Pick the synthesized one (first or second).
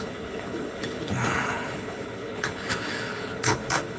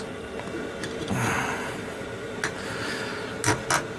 first